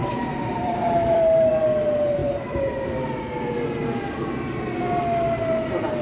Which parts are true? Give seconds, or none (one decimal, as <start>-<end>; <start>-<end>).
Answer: 1.5-2.2; 2.9-6.0